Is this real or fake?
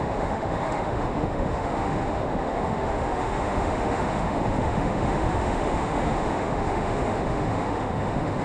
fake